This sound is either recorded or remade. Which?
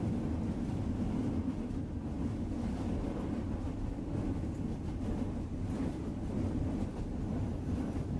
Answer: recorded